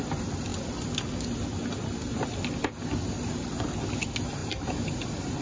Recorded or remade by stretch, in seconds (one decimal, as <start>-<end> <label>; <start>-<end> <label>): 0.0-4.4 recorded; 4.4-5.4 remade